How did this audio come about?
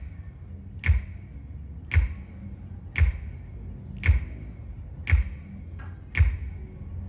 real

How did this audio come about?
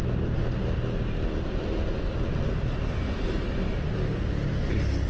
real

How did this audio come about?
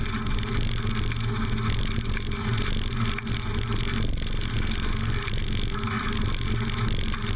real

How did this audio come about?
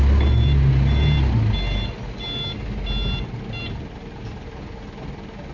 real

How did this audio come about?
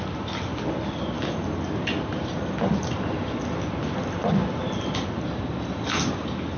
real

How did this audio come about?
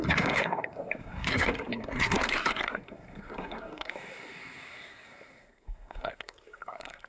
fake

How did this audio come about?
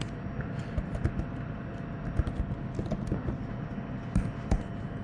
real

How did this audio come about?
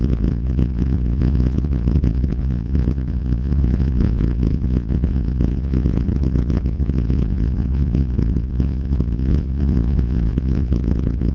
fake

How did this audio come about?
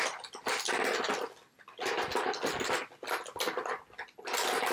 real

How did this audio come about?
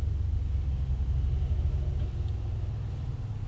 real